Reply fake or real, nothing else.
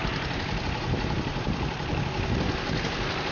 fake